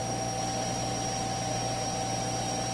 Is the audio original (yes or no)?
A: yes